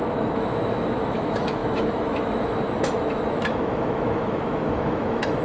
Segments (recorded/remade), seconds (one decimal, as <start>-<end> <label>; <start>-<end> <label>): 0.0-5.4 remade